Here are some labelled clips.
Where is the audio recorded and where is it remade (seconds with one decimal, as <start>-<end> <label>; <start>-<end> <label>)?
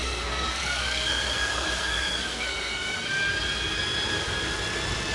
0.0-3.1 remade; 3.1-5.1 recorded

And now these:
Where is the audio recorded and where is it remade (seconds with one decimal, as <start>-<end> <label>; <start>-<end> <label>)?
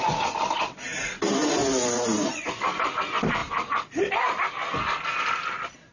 0.0-0.9 recorded; 0.9-2.5 remade; 2.5-5.9 recorded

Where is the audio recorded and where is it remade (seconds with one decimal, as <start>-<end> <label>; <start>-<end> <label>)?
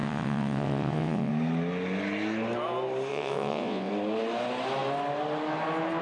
0.0-1.3 remade; 1.3-3.1 recorded; 3.1-3.9 remade; 3.9-6.0 recorded